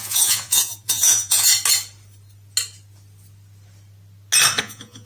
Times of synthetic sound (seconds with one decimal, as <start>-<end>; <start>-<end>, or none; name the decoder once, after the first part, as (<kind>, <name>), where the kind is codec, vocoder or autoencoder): 0.0-1.5 (vocoder, Vocos); 4.6-5.1